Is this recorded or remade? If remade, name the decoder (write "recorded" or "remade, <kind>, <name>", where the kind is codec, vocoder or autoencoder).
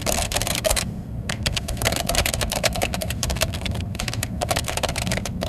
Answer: remade, codec, SNAC